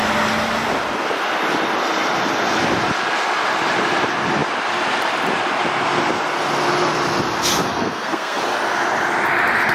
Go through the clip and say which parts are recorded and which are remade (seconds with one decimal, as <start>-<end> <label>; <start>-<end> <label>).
0.0-7.7 recorded; 7.7-8.4 remade; 8.4-9.7 recorded